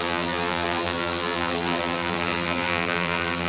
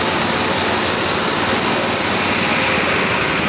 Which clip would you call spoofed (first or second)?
first